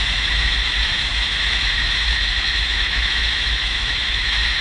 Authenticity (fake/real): fake